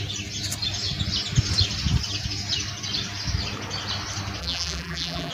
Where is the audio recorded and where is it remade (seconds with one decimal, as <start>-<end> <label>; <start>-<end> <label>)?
0.0-4.4 recorded; 4.4-5.3 remade